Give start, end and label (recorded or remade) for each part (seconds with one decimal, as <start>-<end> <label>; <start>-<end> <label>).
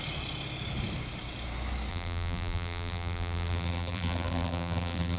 0.0-1.9 recorded; 1.9-5.2 remade